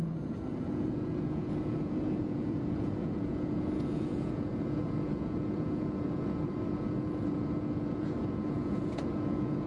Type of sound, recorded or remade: remade